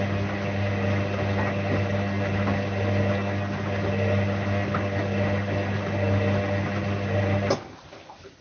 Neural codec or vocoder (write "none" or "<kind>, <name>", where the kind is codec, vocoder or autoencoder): none